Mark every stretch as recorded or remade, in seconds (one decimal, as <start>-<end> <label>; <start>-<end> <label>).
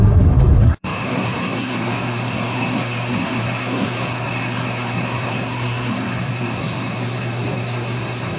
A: 0.0-8.4 remade